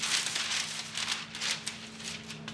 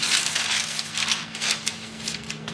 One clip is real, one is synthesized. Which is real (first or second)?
first